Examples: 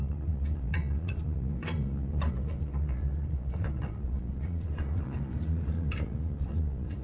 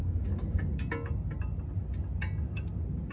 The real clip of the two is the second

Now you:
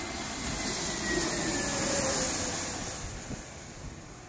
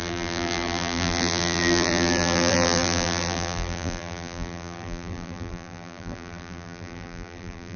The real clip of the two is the first